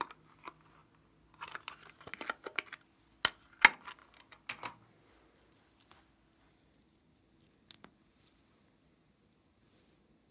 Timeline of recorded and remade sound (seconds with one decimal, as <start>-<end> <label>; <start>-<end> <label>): 0.0-10.3 recorded